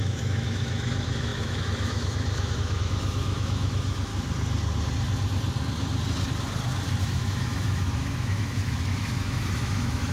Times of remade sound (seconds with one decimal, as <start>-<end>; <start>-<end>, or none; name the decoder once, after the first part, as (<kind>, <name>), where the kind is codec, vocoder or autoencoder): 0.0-4.1 (autoencoder, DAC-VAE); 7.0-10.1